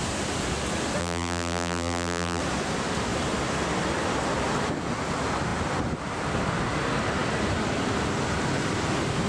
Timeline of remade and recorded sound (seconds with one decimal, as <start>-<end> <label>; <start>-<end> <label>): 0.0-1.0 recorded; 1.0-2.4 remade; 2.4-9.3 recorded